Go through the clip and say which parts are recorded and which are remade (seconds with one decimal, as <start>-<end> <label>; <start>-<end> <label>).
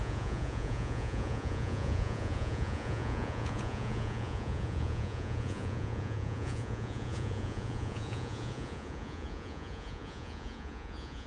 0.0-11.3 remade